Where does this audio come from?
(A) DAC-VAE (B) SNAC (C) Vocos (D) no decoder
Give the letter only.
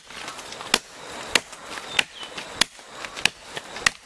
D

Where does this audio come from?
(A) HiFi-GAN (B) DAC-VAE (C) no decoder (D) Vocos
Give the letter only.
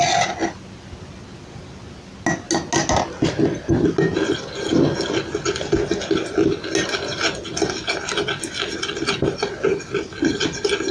C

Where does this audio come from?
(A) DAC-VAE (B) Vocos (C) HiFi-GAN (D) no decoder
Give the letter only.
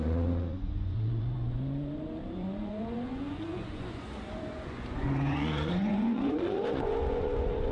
B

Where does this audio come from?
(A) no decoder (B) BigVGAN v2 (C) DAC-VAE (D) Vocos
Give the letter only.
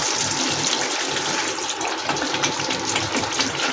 A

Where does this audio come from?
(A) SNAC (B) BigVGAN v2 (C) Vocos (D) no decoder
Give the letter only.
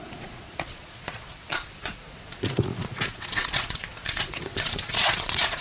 C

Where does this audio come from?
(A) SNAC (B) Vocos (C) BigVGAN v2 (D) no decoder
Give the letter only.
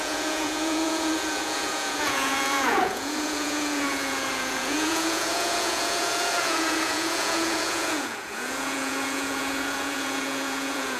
B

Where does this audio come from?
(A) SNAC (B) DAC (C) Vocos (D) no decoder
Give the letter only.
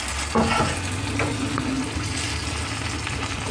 D